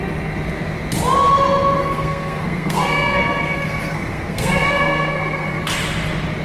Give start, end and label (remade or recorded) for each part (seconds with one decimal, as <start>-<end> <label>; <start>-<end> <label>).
0.0-1.8 recorded; 1.8-5.6 remade; 5.6-6.4 recorded